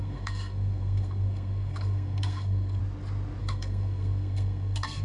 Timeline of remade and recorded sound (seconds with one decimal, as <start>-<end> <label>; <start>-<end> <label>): 0.0-2.8 remade; 2.8-3.4 recorded; 3.4-5.0 remade